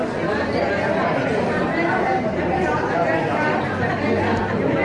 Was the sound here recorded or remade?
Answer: recorded